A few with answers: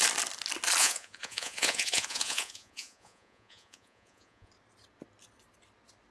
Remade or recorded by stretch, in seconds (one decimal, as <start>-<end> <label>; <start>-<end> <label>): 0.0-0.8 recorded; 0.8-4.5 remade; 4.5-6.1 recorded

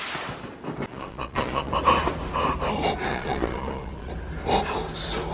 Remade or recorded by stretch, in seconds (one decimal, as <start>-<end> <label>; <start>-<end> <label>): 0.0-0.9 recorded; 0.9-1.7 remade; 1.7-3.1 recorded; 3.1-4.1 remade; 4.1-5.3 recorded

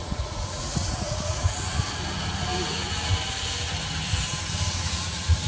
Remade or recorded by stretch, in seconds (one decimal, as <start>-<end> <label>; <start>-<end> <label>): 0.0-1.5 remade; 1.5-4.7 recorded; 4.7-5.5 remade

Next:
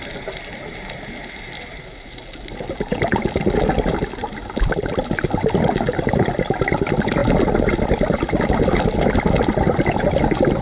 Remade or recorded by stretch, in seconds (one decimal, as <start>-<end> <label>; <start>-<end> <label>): 0.0-10.6 recorded

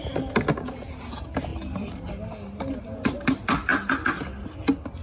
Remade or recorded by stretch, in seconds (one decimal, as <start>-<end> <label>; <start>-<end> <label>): 0.0-5.0 recorded

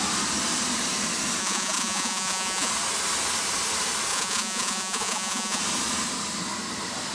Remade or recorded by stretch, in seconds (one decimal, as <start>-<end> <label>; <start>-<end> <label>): 0.0-1.4 recorded; 1.4-2.7 remade; 2.7-4.1 recorded; 4.1-5.6 remade; 5.6-7.1 recorded

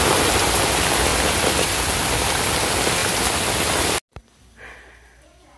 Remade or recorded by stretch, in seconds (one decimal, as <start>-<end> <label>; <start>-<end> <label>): 0.0-5.6 recorded

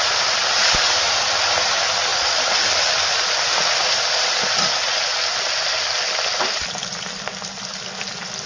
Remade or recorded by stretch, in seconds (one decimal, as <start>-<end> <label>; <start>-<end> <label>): 0.0-8.5 recorded